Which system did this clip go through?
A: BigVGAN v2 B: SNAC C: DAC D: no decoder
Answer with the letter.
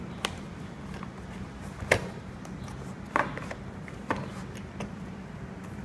D